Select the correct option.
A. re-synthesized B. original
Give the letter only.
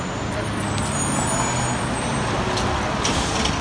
B